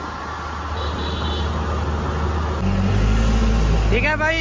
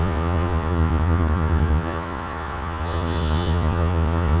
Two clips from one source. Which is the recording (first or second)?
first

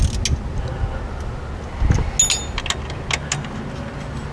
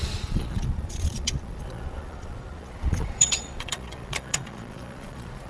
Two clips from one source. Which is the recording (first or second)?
first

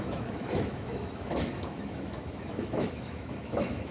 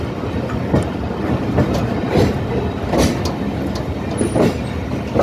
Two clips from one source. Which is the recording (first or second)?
second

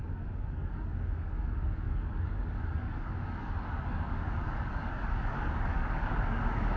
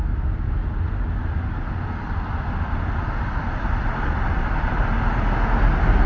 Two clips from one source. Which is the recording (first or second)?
second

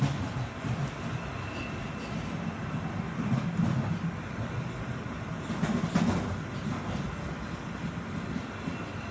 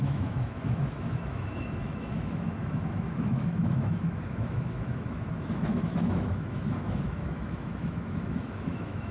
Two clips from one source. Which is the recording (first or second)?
first